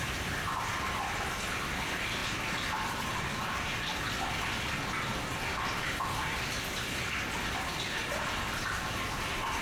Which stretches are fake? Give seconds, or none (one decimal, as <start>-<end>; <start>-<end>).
none